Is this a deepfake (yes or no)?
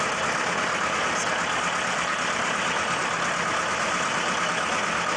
no